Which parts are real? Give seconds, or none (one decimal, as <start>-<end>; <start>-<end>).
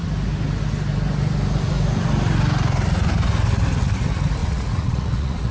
0.0-4.4